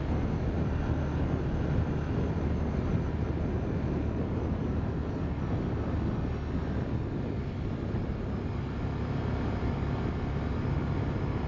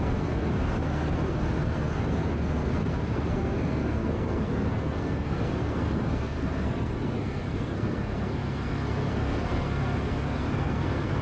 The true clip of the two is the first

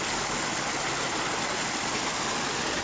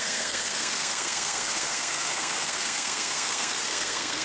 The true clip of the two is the first